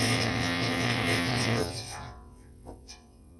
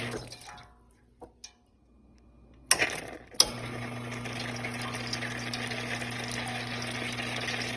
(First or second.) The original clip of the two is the second